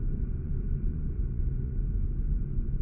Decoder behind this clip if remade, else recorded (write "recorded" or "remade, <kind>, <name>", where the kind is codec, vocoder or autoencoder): remade, vocoder, Vocos